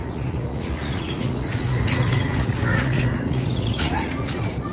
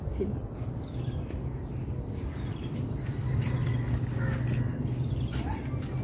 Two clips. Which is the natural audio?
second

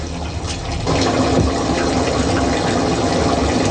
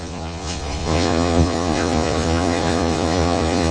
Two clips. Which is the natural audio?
first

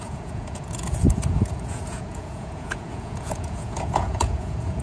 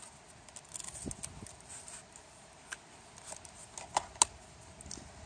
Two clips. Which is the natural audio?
second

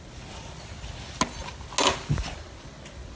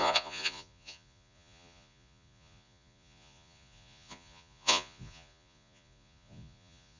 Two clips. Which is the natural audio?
first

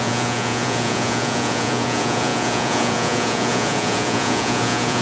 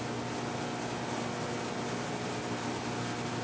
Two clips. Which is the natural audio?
second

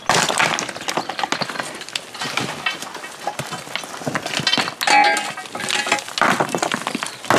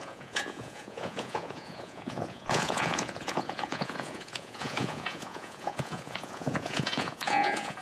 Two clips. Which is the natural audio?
first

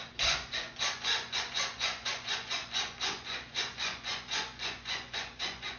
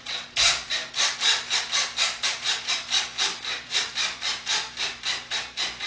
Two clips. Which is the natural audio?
second